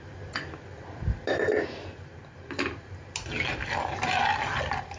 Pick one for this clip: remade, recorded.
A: recorded